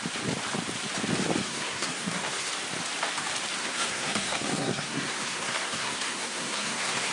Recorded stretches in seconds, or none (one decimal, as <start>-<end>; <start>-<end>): 0.0-1.4; 2.5-3.6